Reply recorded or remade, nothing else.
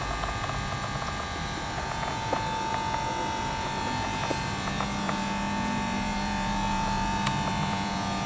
remade